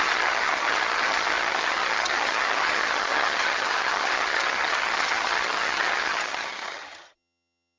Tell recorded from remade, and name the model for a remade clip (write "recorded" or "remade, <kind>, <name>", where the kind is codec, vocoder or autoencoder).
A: remade, vocoder, HiFi-GAN